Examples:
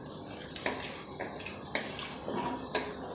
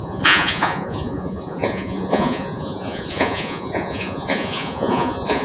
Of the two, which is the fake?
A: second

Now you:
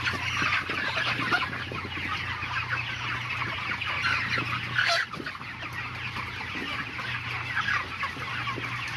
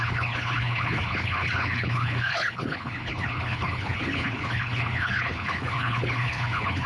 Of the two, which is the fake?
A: second